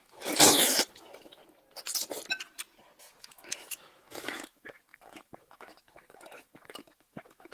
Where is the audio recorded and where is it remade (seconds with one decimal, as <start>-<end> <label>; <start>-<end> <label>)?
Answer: 0.0-1.4 remade; 1.4-3.0 recorded; 3.0-7.5 remade